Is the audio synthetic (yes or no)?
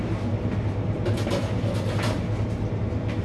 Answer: no